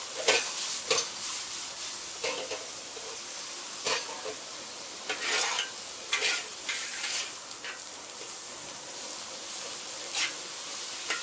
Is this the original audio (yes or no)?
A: yes